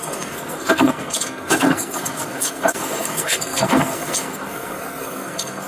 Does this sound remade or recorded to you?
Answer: remade